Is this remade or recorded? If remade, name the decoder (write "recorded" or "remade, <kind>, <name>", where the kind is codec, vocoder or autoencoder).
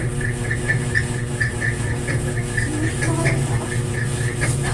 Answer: recorded